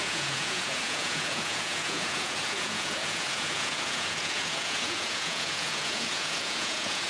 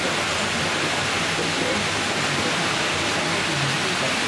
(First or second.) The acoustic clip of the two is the second